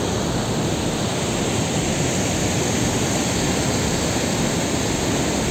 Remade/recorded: recorded